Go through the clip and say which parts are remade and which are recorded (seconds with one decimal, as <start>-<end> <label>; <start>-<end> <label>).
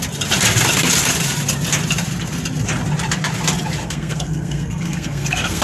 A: 0.0-3.8 recorded; 3.8-5.6 remade